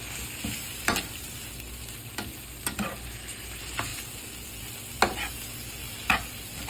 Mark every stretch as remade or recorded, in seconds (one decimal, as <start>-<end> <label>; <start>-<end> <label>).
0.0-0.7 recorded; 0.7-1.8 remade; 1.8-3.9 recorded; 3.9-4.6 remade; 4.6-5.8 recorded; 5.8-6.7 remade